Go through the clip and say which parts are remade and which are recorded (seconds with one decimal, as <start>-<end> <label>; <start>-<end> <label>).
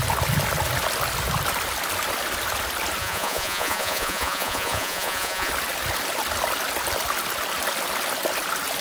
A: 0.0-3.0 recorded; 3.0-5.5 remade; 5.5-8.8 recorded